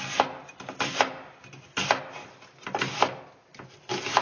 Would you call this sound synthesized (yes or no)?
no